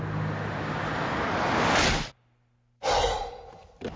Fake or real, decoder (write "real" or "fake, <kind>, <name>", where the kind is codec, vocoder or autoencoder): real